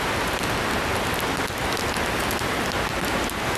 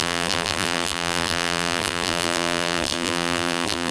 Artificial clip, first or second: second